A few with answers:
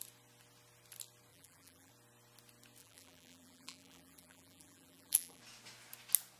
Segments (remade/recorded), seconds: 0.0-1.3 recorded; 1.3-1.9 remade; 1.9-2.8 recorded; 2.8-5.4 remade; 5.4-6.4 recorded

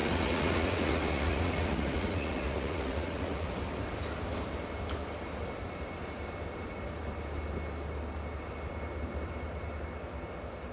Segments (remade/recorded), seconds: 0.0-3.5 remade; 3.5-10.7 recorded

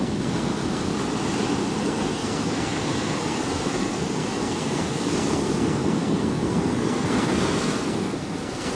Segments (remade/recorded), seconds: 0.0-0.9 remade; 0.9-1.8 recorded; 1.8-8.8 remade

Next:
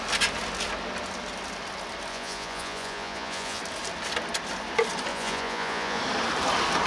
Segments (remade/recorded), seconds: 0.0-2.1 recorded; 2.1-3.6 remade; 3.6-5.1 recorded; 5.1-6.0 remade; 6.0-6.9 recorded

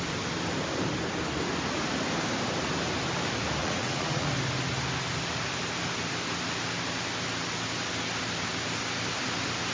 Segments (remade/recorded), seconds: 0.0-3.6 recorded; 3.6-4.3 remade; 4.3-9.7 recorded

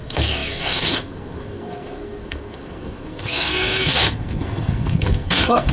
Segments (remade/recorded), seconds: 0.0-5.7 remade